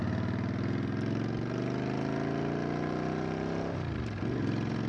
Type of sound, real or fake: real